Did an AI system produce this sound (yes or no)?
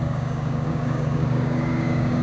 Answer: yes